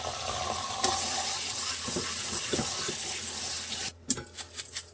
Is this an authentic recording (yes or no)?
yes